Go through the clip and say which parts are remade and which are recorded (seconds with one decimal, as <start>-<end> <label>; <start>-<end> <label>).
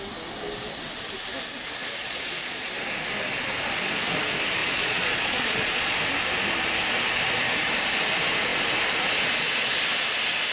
0.0-2.0 recorded; 2.0-2.7 remade; 2.7-4.6 recorded; 4.6-6.0 remade; 6.0-10.5 recorded